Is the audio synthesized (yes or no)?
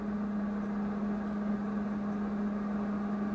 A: no